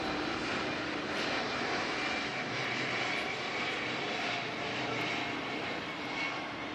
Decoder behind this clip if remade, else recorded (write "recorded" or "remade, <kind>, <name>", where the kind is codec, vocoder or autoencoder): remade, vocoder, BigVGAN v2